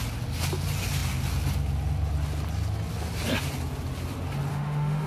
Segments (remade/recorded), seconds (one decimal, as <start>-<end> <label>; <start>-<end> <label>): 0.0-4.5 recorded; 4.5-5.1 remade